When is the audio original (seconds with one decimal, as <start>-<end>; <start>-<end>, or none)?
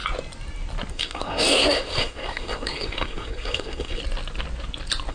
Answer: 0.0-0.9; 4.0-5.1